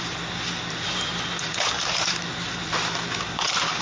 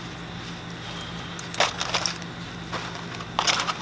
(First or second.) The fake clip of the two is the first